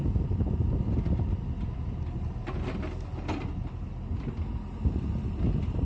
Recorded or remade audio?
recorded